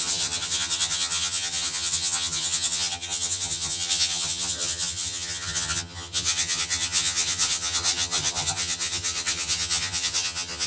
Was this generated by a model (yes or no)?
yes